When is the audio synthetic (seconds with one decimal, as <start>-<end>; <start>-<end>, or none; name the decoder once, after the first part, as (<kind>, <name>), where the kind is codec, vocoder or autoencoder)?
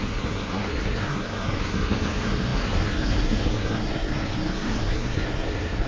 0.0-5.9 (codec, SNAC)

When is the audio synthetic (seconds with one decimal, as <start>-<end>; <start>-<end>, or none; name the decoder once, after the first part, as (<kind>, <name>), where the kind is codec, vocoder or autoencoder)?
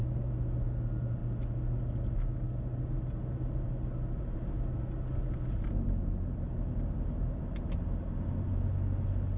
none